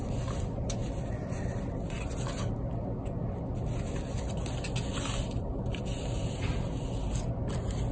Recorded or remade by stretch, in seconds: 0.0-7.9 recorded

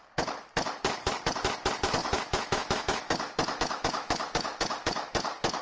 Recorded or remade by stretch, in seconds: 0.0-2.0 recorded; 2.0-5.6 remade

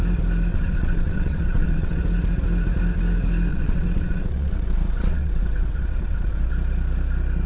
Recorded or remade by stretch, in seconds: 0.0-0.5 recorded; 0.5-2.0 remade; 2.0-3.5 recorded; 3.5-6.5 remade; 6.5-7.5 recorded

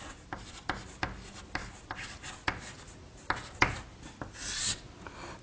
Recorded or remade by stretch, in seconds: 0.0-5.4 recorded

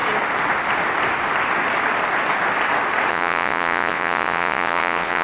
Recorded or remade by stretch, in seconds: 0.0-3.1 recorded; 3.1-5.2 remade